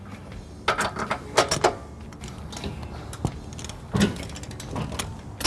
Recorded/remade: recorded